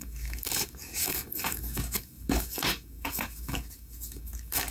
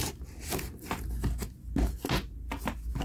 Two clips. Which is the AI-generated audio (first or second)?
first